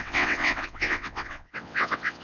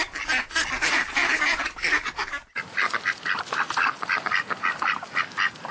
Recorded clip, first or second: second